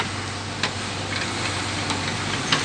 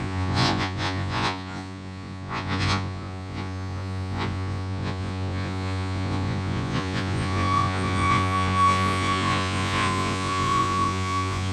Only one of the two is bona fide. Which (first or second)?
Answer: first